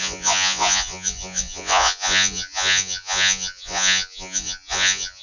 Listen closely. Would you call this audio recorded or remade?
remade